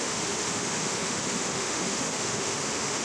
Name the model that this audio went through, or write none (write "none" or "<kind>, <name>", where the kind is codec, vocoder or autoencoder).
autoencoder, DAC-VAE